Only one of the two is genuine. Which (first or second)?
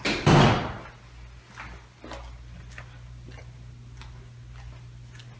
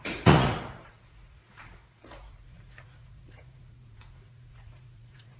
first